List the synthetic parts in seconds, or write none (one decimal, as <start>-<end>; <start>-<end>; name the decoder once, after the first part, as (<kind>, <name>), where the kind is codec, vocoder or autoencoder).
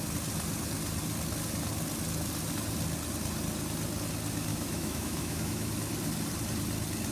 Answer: 4.5-5.7 (autoencoder, DAC-VAE)